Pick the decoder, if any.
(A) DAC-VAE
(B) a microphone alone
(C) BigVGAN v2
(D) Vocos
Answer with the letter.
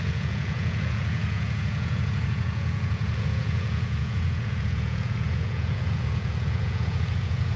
D